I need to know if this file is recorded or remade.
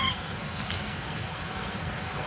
remade